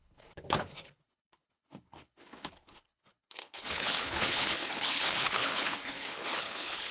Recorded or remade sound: remade